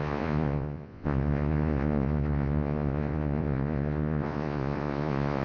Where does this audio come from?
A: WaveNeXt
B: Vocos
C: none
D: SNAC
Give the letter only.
B